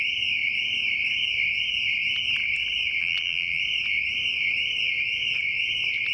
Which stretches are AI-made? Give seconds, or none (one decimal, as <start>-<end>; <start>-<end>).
3.0-3.6